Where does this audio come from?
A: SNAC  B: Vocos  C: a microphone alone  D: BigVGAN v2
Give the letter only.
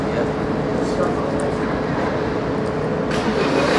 C